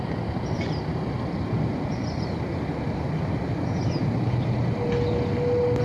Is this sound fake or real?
real